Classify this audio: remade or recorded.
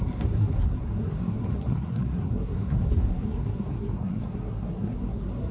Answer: remade